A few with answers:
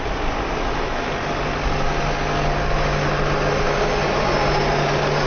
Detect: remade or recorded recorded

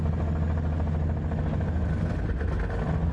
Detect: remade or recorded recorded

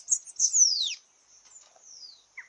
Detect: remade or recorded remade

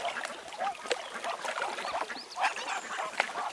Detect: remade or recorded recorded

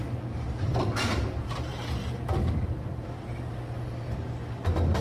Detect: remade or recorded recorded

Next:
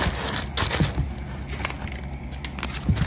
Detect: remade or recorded recorded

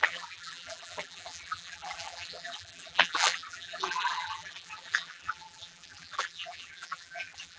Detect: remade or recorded remade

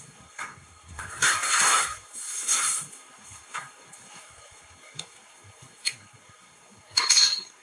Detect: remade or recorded remade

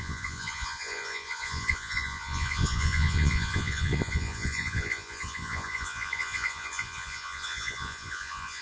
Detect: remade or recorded remade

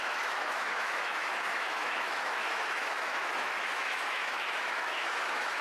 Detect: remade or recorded remade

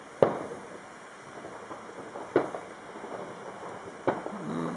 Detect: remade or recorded recorded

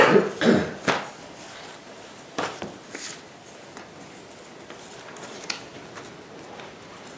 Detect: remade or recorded recorded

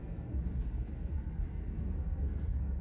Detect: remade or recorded remade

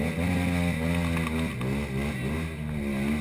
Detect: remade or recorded recorded